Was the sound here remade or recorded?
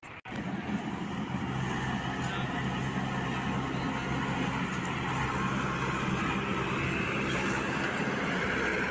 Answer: recorded